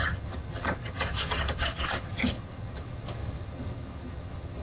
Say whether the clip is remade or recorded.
remade